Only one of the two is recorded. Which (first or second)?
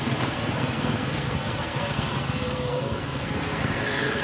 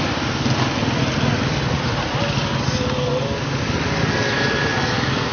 second